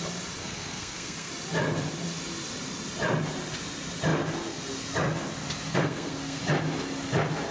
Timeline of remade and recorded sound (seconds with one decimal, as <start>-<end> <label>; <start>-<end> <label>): 0.0-0.4 recorded; 0.4-1.3 remade; 1.3-5.7 recorded; 5.7-6.4 remade; 6.4-7.5 recorded